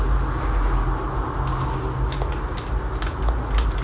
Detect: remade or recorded recorded